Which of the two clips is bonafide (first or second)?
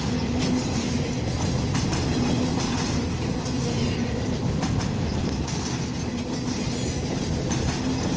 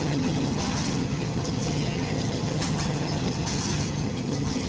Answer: first